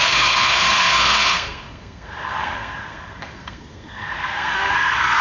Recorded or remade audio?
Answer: remade